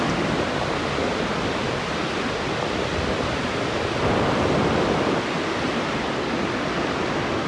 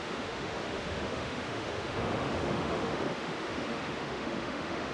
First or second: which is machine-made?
second